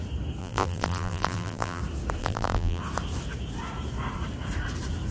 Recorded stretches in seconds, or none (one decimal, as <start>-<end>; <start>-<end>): 0.0-0.4; 1.8-2.2; 2.8-5.1